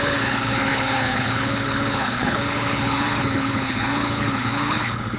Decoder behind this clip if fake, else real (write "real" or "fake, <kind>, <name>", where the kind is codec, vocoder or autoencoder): fake, codec, HILCodec